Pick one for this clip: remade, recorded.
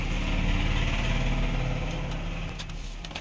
recorded